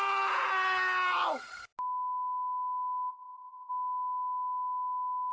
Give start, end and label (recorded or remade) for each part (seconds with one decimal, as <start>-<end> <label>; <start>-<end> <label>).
0.0-3.1 recorded; 3.1-3.7 remade; 3.7-5.3 recorded